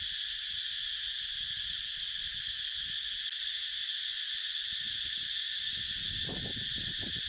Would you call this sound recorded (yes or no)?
yes